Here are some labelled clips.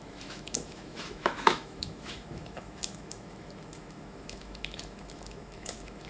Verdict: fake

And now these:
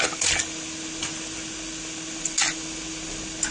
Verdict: real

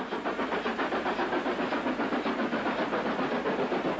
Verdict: real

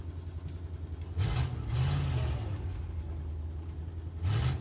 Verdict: real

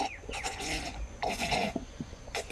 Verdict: fake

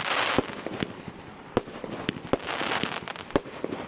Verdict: real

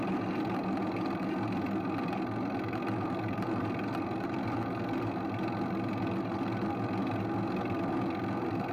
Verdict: real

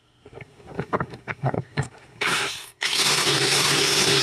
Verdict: fake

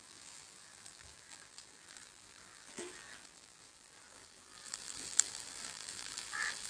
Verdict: fake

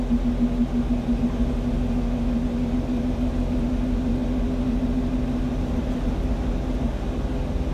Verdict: real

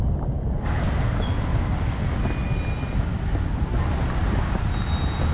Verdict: real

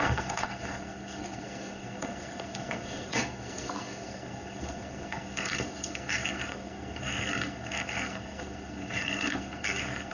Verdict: fake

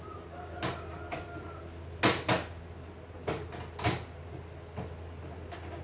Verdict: real